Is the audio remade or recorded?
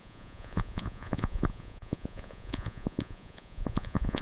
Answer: remade